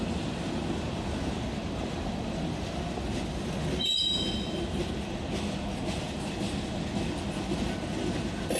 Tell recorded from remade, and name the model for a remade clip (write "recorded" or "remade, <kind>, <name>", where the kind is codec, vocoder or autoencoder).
recorded